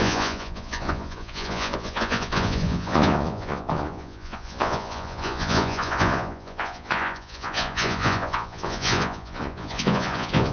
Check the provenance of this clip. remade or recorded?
remade